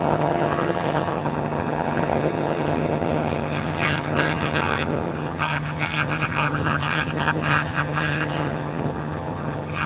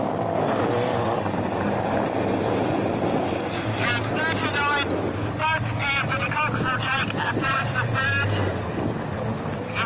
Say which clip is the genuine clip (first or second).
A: second